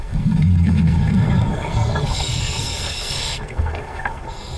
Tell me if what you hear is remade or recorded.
remade